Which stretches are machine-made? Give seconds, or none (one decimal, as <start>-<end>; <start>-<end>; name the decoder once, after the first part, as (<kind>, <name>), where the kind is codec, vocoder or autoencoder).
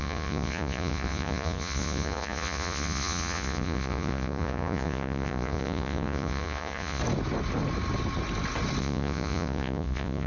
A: 0.0-7.0 (vocoder, Vocos); 8.8-10.3